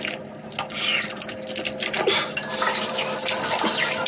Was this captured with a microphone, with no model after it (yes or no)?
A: yes